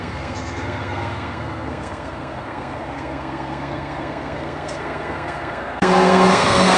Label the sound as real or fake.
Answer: fake